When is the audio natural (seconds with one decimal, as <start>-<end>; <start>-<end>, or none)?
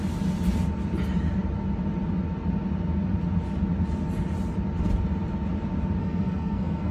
0.0-6.0